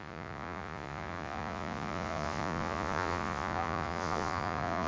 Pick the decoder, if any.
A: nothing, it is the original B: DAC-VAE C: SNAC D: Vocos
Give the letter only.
D